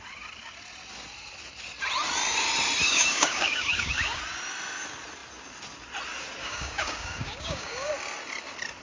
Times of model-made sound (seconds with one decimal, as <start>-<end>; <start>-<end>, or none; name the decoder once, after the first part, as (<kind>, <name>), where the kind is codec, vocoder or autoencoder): 2.8-4.2 (codec, DAC); 6.4-7.9